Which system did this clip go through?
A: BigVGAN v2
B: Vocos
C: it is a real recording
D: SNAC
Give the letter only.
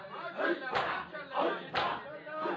C